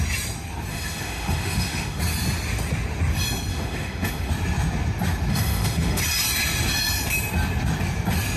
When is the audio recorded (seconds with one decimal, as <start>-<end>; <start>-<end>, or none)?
0.0-0.7; 2.0-3.5; 4.3-5.3; 6.0-8.4